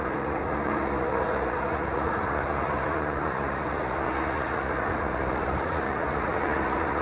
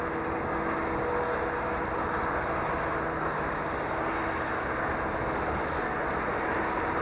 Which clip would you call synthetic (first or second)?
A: first